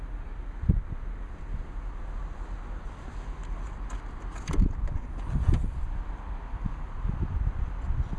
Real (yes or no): yes